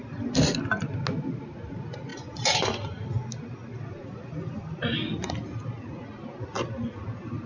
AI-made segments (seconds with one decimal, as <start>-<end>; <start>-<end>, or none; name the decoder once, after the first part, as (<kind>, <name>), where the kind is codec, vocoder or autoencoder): none